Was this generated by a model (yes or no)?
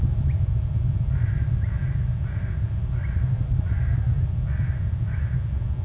no